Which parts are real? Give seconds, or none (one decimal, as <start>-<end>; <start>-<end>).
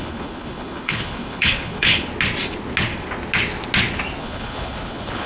2.1-4.2